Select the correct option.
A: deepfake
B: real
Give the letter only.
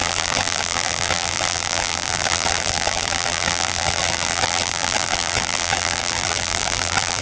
A